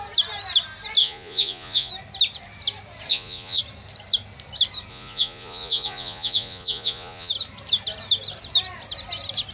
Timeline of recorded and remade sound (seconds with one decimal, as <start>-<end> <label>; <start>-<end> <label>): 0.0-1.0 recorded; 1.0-1.9 remade; 1.9-3.1 recorded; 3.1-3.6 remade; 3.6-4.9 recorded; 4.9-7.3 remade; 7.3-9.5 recorded